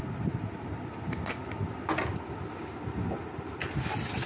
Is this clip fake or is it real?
real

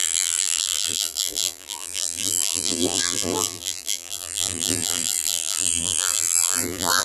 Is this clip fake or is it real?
fake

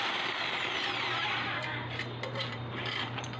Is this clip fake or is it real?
fake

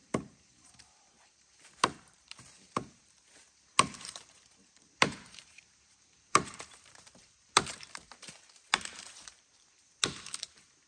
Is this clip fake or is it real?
fake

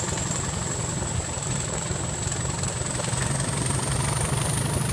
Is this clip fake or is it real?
fake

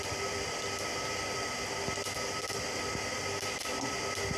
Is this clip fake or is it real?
real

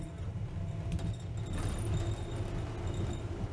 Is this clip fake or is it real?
real